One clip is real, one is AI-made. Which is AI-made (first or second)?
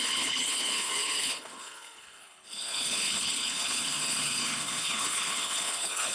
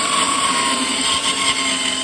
first